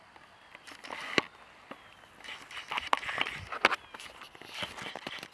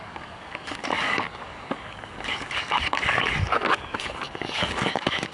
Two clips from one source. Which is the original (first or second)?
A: first